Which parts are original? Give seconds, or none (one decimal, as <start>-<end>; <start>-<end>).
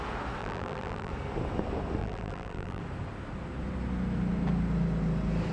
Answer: 0.0-0.4; 1.1-2.0; 2.8-5.5